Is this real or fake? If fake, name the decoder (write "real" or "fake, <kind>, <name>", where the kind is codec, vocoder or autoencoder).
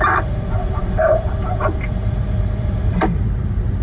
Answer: fake, vocoder, BigVGAN v2